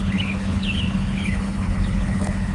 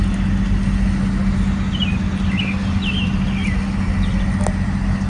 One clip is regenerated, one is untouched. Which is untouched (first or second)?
second